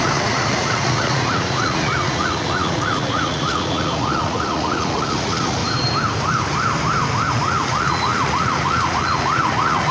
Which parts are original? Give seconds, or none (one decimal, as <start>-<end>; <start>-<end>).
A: 5.6-7.3